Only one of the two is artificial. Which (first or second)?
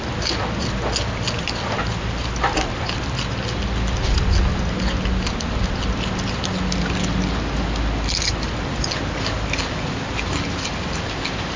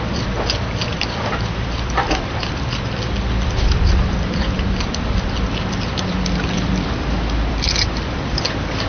second